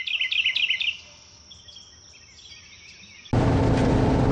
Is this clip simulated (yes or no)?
no